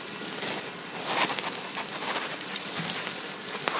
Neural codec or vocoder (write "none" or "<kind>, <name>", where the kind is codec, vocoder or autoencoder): none